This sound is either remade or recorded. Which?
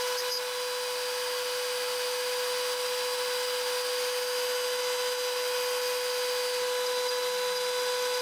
recorded